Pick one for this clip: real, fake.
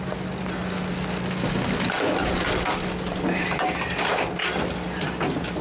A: real